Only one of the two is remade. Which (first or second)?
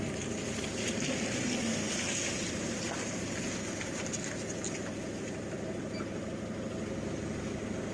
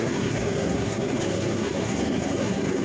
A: second